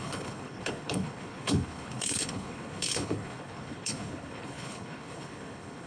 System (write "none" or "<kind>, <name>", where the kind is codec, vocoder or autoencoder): codec, HILCodec